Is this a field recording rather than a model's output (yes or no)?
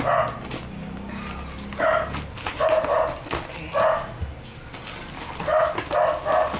yes